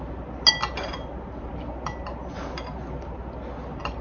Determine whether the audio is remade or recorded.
recorded